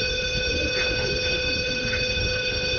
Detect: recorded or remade remade